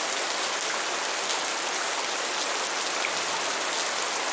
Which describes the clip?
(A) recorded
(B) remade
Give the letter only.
A